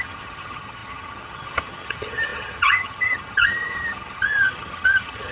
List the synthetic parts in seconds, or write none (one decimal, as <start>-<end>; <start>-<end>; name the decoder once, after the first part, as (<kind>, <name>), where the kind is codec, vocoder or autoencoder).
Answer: 0.0-5.3 (vocoder, HiFi-GAN)